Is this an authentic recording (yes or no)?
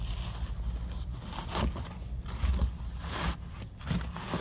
yes